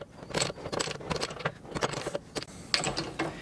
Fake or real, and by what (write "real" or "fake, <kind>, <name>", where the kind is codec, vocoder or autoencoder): real